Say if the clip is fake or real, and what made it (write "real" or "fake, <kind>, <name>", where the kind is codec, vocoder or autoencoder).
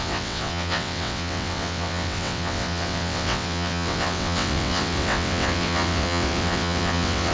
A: fake, vocoder, WaveNeXt